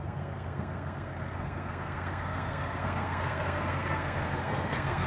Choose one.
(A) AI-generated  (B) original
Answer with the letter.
A